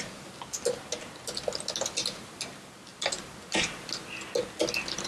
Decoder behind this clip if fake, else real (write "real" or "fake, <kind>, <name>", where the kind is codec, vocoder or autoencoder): real